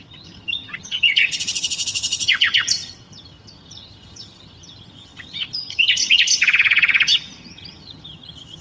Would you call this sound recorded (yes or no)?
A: no